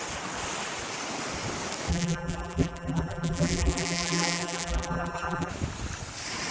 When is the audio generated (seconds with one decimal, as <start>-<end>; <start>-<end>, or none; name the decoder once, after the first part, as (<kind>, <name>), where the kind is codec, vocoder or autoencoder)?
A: 1.9-5.5 (vocoder, BigVGAN v2)